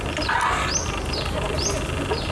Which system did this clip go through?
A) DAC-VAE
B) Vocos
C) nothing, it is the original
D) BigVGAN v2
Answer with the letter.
C